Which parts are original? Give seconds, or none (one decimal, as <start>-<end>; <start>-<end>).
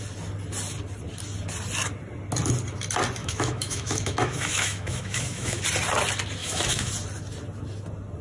0.0-3.2; 5.6-6.4; 6.9-8.2